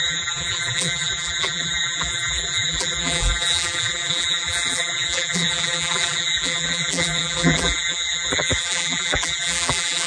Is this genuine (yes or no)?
no